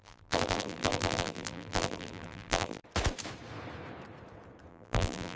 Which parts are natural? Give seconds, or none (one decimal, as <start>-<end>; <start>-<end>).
2.8-4.7